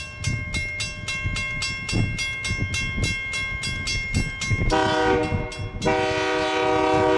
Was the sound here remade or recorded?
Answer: recorded